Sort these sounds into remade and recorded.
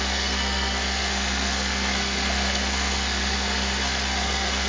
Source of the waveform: remade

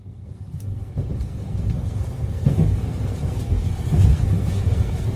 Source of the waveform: remade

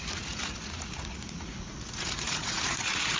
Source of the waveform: remade